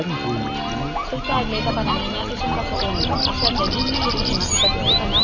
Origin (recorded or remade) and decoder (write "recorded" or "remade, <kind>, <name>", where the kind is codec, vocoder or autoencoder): recorded